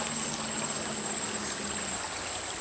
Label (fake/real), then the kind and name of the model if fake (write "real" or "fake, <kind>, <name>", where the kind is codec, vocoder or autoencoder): real